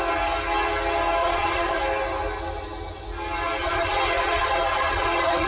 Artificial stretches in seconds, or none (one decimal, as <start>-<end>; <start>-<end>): 1.2-1.8; 3.6-5.5